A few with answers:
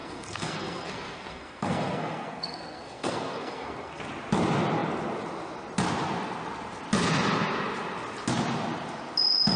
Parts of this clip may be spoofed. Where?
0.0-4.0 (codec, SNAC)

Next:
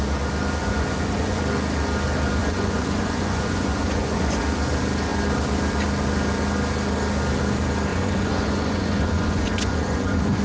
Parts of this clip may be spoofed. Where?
0.6-1.4 (vocoder, Vocos); 2.4-4.4; 7.9-10.4

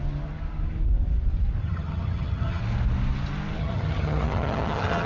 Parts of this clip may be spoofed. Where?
1.6-2.6 (vocoder, HiFi-GAN); 3.6-5.1

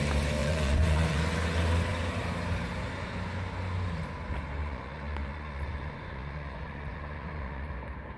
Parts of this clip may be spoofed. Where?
0.4-1.2 (vocoder, Vocos); 4.6-7.7

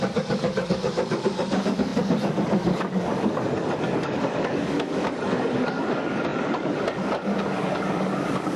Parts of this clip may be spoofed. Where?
0.0-8.6 (codec, DAC)

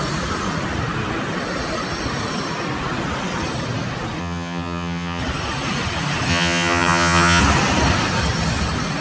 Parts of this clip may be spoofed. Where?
4.2-5.2 (vocoder, HiFi-GAN); 6.3-7.4